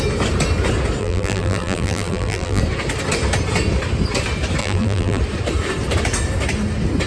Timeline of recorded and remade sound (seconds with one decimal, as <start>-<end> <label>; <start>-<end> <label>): 0.0-1.0 recorded; 1.0-2.6 remade; 2.6-4.6 recorded; 4.6-5.2 remade; 5.2-7.1 recorded